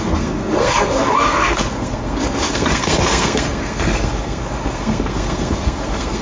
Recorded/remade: remade